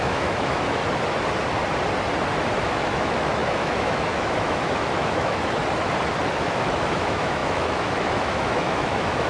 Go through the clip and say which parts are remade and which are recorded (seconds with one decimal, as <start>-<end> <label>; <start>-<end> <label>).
0.0-0.8 remade; 0.8-2.6 recorded; 2.6-5.6 remade; 5.6-6.3 recorded; 6.3-9.3 remade